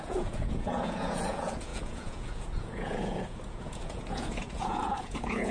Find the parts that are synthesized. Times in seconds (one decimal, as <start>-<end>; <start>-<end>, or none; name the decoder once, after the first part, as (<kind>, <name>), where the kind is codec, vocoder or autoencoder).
0.0-5.5 (vocoder, Vocos)